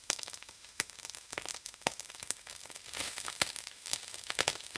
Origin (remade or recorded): remade